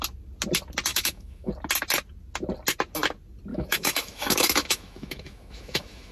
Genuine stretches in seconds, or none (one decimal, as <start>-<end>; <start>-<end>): 0.0-0.9; 1.5-3.5